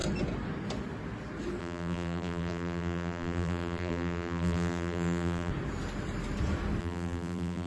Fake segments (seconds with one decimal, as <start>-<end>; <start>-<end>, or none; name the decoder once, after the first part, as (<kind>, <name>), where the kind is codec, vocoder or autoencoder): 1.6-5.5 (vocoder, BigVGAN v2); 6.8-7.7